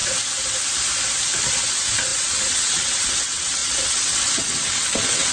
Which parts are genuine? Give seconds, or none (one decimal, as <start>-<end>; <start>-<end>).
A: 0.0-1.5